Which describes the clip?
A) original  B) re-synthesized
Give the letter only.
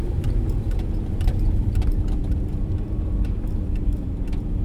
B